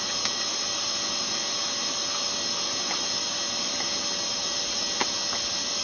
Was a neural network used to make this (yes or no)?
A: no